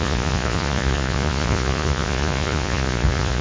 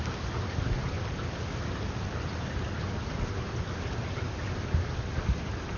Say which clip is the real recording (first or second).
second